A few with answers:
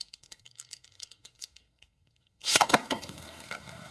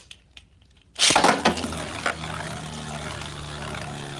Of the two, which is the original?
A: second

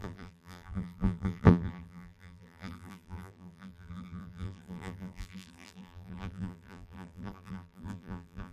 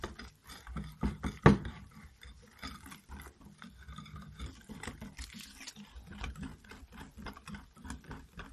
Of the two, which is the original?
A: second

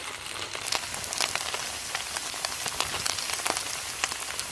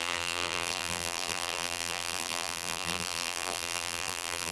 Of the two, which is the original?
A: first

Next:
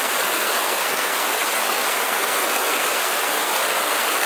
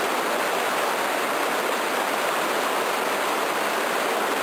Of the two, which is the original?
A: second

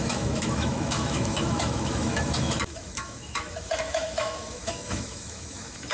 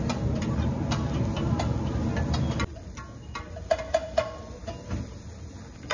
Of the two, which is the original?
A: second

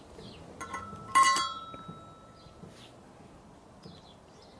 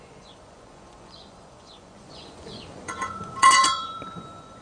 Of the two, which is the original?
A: first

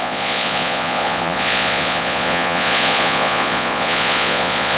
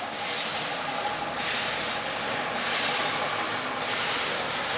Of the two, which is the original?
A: second